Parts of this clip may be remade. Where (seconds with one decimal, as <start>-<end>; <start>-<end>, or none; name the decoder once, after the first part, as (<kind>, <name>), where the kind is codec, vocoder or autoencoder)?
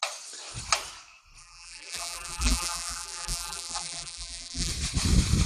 1.4-4.7 (vocoder, BigVGAN v2)